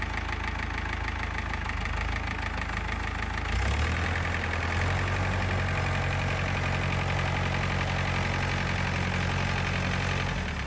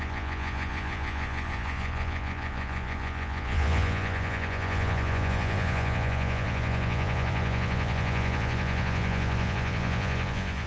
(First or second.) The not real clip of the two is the second